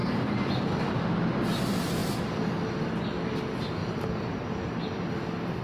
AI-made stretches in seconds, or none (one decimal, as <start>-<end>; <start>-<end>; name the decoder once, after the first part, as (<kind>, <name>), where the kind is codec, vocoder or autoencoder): 0.0-0.9 (vocoder, BigVGAN v2); 3.8-4.9